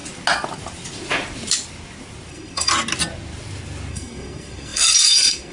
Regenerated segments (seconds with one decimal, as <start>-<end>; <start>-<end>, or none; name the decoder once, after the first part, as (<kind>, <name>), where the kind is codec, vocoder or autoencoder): 2.3-2.7 (codec, SNAC); 3.9-5.5